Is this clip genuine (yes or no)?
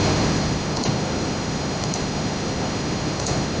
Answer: no